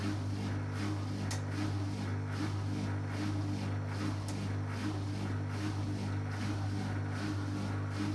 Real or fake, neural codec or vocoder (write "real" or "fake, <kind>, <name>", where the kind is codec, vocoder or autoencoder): real